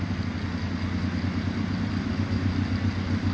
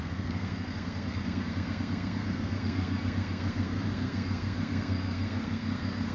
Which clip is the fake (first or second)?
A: second